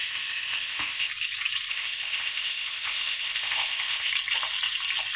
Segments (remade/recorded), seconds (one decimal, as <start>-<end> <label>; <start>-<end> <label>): 0.0-1.1 remade; 1.1-1.7 recorded; 1.7-4.1 remade; 4.1-5.2 recorded